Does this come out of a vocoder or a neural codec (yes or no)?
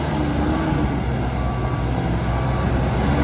no